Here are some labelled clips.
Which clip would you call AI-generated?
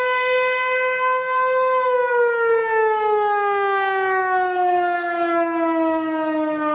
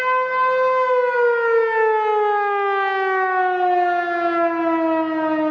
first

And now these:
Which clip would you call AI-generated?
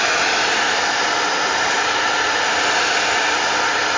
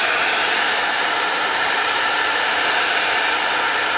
second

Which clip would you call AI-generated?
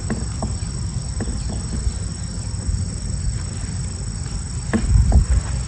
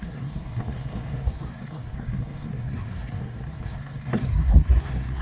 second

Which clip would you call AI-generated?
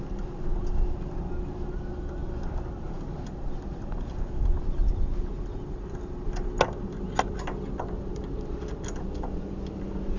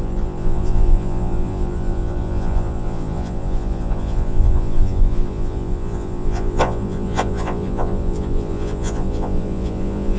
second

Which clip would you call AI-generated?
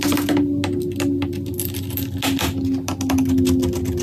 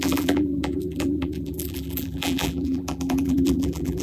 second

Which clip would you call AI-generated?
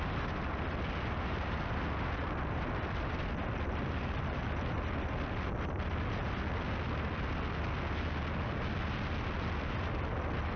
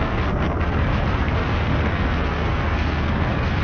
second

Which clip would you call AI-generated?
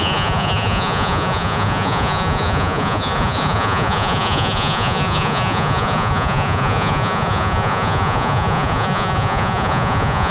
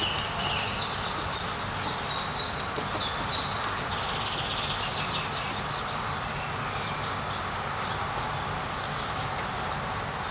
first